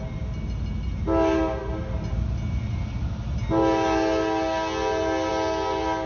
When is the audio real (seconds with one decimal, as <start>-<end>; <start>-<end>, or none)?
0.0-6.1